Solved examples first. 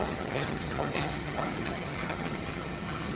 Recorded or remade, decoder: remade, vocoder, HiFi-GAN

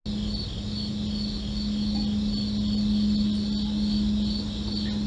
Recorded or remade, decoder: recorded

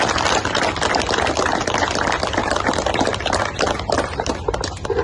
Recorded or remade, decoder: recorded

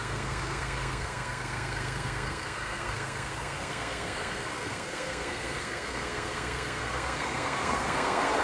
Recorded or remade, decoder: remade, codec, SNAC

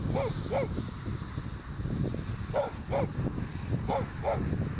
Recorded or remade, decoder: recorded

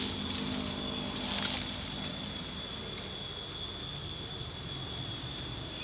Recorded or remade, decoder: recorded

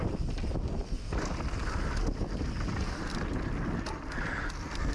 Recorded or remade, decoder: recorded